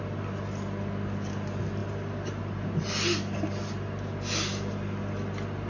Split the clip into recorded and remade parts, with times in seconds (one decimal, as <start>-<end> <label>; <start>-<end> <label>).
0.0-5.7 recorded